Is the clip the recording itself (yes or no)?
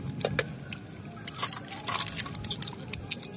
yes